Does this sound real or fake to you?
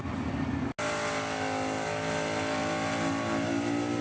real